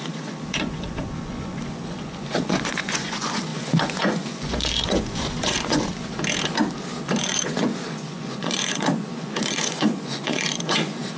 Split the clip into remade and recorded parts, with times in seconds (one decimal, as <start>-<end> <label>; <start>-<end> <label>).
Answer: 0.0-5.9 remade; 5.9-7.2 recorded; 7.2-11.2 remade